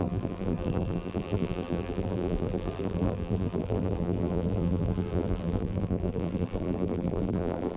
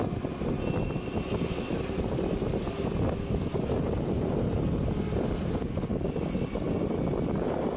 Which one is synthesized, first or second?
first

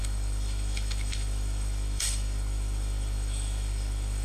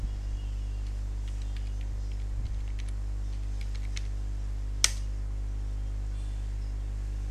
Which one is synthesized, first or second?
first